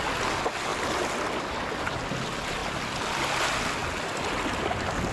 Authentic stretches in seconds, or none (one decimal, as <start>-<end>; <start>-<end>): 0.0-2.6; 3.3-5.1